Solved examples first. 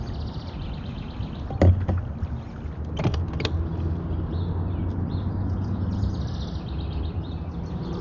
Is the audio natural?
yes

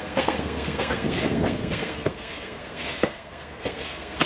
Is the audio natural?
no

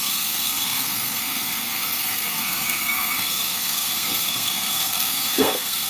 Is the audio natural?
no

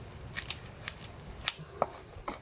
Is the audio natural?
yes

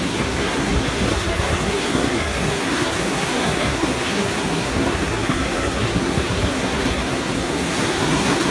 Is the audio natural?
no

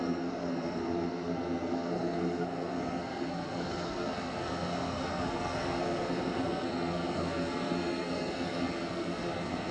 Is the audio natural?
no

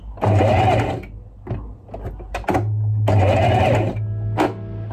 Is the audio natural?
yes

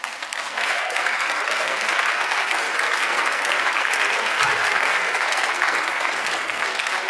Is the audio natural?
no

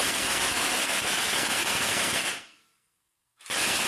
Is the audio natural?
no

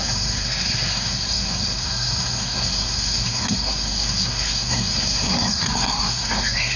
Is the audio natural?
no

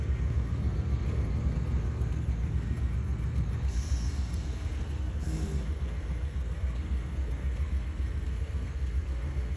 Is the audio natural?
no